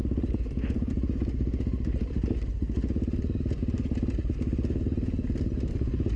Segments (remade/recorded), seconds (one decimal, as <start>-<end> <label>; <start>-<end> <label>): 0.0-6.2 recorded